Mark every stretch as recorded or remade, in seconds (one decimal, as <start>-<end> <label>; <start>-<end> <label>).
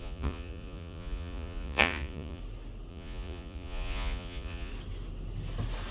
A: 0.0-2.4 remade; 2.4-2.9 recorded; 2.9-4.7 remade; 4.7-5.9 recorded